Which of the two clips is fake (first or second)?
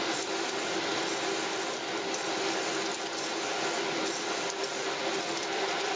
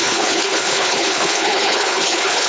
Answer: second